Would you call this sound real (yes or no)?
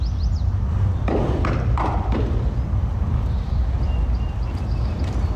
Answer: no